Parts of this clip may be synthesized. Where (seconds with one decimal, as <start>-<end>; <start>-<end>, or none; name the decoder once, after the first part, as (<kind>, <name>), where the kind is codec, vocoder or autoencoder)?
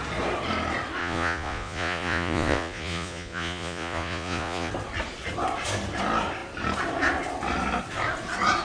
1.0-4.7 (vocoder, Vocos)